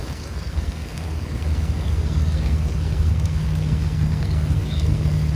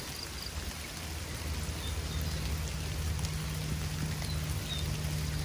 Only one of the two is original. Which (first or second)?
second